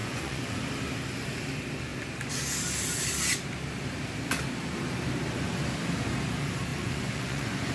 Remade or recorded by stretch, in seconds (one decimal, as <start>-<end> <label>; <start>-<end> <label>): 0.0-0.7 remade; 0.7-6.7 recorded; 6.7-7.7 remade